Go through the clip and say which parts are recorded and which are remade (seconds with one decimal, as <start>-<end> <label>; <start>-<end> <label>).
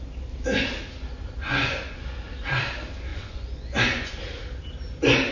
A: 0.0-1.4 recorded; 1.4-2.0 remade; 2.0-3.1 recorded; 3.1-4.1 remade; 4.1-5.3 recorded